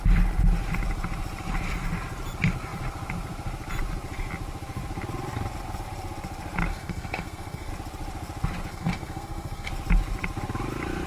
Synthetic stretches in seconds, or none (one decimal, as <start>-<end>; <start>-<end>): 6.7-7.7; 8.7-9.7